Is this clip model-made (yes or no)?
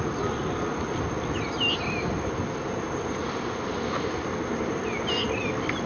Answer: no